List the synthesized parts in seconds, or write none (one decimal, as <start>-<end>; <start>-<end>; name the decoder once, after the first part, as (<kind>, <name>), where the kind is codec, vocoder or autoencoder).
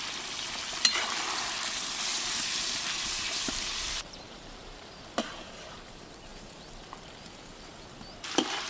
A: 2.1-4.8 (vocoder, BigVGAN v2)